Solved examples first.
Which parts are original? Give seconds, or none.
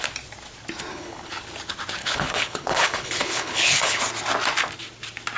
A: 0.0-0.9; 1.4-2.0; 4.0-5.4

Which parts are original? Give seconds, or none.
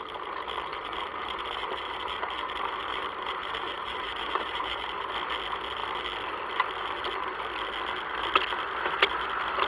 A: 0.0-0.7; 5.1-9.7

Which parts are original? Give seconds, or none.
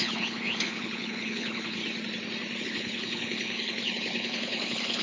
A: 1.8-2.6